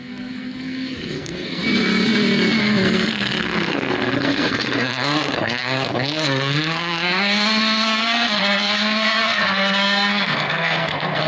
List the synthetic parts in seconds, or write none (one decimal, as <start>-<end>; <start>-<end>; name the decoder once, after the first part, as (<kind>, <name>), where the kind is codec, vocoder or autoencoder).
0.0-1.6 (codec, SNAC); 2.6-11.3